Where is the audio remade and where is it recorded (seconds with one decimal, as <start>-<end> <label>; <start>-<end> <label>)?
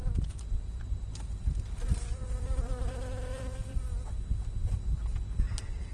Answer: 0.0-3.9 remade; 3.9-4.6 recorded; 4.6-5.1 remade; 5.1-5.9 recorded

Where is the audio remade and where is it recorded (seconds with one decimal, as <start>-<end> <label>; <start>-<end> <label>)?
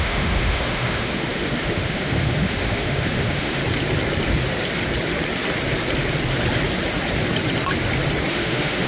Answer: 0.0-3.6 remade; 3.6-8.3 recorded; 8.3-8.9 remade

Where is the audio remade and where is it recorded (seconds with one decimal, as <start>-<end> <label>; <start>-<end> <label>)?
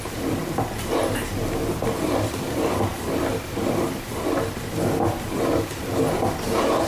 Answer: 0.0-6.9 recorded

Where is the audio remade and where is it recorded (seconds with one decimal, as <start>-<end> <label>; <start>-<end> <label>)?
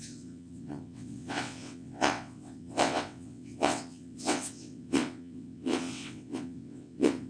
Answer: 0.0-7.3 remade